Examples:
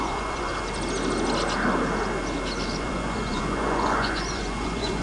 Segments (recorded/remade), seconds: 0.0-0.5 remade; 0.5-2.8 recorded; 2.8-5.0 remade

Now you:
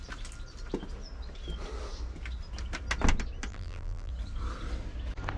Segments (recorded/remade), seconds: 0.0-3.5 recorded; 3.5-4.1 remade; 4.1-5.4 recorded

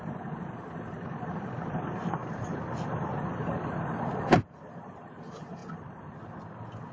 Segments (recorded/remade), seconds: 0.0-2.2 remade; 2.2-3.3 recorded; 3.3-5.6 remade; 5.6-6.9 recorded

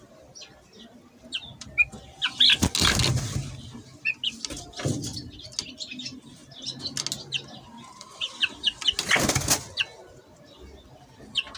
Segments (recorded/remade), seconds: 0.0-11.6 recorded